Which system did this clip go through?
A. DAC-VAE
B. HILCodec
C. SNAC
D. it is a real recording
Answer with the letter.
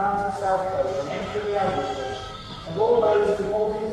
C